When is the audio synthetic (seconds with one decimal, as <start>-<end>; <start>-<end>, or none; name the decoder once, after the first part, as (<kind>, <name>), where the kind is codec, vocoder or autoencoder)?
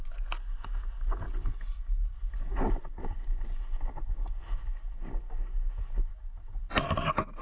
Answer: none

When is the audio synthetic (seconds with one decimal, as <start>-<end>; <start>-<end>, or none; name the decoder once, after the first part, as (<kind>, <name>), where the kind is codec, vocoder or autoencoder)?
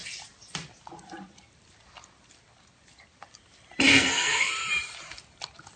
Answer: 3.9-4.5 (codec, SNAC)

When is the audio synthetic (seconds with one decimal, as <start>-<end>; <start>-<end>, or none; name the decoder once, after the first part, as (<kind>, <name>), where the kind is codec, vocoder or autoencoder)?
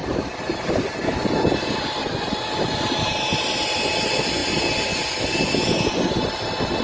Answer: 0.0-0.8 (vocoder, BigVGAN v2); 2.0-3.1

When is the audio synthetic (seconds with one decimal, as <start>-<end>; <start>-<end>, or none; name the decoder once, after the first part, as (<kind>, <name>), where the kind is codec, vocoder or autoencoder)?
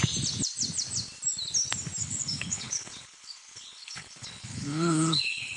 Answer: 2.0-5.6 (codec, HILCodec)